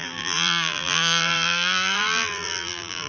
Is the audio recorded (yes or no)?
no